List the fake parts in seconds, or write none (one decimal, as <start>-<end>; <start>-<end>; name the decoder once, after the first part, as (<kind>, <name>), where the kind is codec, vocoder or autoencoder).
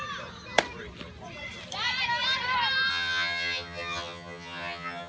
2.9-5.1 (vocoder, HiFi-GAN)